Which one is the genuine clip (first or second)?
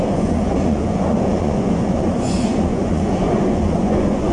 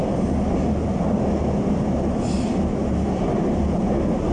second